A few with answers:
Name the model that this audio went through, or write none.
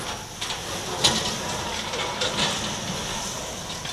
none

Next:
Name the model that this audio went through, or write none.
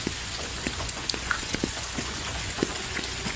vocoder, Vocos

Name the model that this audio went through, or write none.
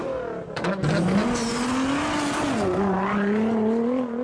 none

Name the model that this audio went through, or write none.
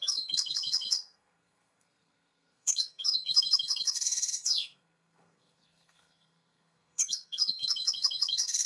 codec, SNAC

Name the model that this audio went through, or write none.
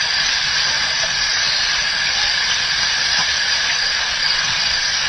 vocoder, Vocos